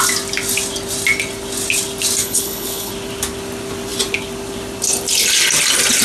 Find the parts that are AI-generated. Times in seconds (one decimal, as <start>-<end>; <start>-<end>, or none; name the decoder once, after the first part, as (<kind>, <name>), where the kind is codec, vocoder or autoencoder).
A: 2.2-2.9 (codec, HILCodec)

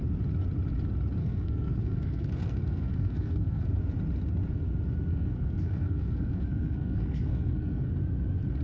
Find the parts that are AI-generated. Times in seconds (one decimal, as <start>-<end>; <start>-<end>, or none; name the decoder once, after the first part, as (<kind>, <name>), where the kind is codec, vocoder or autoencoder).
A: 1.2-3.8 (codec, SNAC); 5.1-7.9